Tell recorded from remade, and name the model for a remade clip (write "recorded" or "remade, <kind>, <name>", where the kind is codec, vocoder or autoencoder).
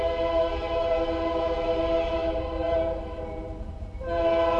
remade, vocoder, BigVGAN v2